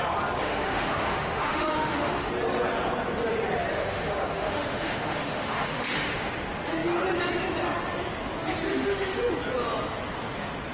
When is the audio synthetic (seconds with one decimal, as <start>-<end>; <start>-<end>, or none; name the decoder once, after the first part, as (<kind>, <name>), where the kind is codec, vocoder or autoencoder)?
0.4-2.3 (autoencoder, DAC-VAE); 3.7-6.3; 8.7-9.3